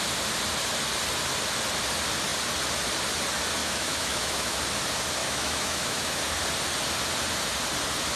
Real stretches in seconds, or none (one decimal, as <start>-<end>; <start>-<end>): 0.0-3.6; 4.6-5.2; 6.2-8.2